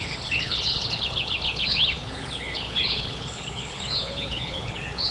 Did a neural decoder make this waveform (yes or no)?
yes